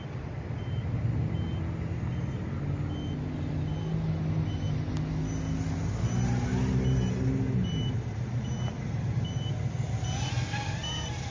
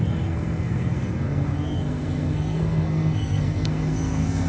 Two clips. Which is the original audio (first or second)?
first